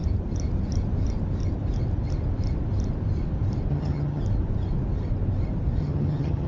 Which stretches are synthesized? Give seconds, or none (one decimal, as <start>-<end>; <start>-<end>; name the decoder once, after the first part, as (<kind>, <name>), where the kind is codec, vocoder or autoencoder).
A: 3.7-4.2 (vocoder, HiFi-GAN); 5.8-6.5